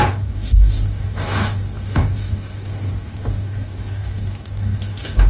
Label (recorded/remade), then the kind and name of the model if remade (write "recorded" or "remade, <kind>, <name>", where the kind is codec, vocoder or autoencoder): remade, codec, DAC